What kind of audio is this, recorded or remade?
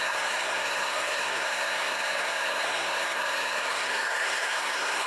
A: remade